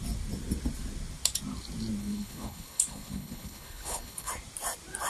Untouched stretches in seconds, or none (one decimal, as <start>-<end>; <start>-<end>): 0.0-2.0; 4.3-5.1